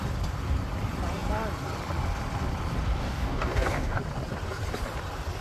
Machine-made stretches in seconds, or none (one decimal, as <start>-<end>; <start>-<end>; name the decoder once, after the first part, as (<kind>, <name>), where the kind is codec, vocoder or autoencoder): 3.0-4.0 (codec, DAC)